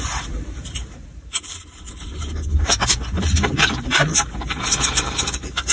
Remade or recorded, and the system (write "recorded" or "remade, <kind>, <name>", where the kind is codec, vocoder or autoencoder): remade, vocoder, BigVGAN v2